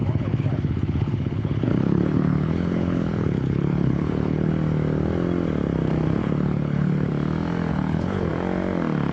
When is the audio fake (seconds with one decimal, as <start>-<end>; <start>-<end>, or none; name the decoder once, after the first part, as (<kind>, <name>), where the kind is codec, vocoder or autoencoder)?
0.0-4.5 (codec, HILCodec); 6.2-7.1; 7.7-8.3